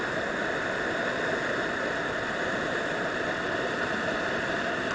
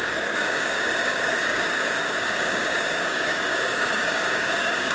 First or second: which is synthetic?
second